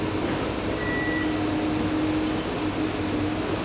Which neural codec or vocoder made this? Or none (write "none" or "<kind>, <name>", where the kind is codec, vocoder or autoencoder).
none